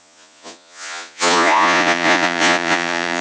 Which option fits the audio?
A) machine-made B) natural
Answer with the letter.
A